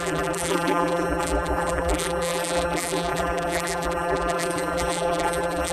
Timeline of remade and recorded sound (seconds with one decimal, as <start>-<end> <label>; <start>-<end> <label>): 0.0-5.7 remade